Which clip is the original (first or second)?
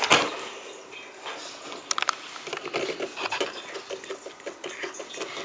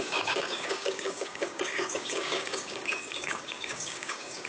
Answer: first